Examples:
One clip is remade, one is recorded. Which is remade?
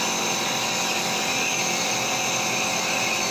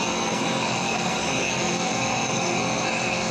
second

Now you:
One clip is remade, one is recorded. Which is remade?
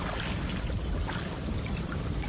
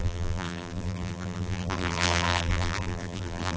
second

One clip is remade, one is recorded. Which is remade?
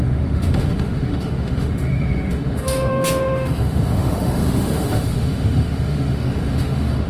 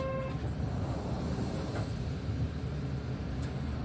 first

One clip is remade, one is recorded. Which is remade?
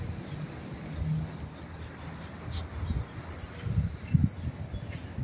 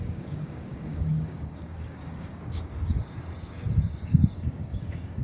second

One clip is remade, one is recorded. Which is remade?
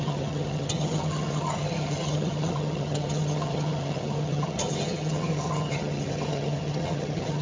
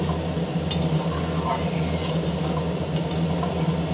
first